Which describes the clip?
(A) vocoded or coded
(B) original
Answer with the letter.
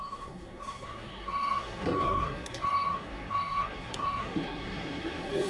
A